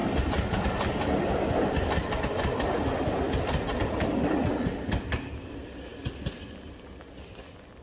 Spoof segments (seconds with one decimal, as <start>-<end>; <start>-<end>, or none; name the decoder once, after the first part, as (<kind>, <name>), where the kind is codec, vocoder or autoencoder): 0.0-2.8 (vocoder, BigVGAN v2)